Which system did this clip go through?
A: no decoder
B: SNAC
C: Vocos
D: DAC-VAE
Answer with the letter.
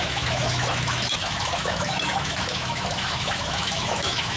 D